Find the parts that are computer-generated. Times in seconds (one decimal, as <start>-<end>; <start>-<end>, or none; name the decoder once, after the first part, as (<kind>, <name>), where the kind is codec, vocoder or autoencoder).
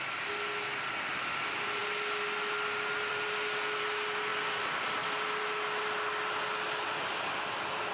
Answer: none